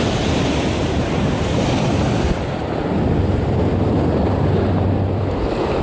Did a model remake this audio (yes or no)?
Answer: yes